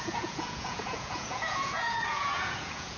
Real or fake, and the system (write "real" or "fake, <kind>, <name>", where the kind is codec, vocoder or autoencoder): fake, vocoder, Vocos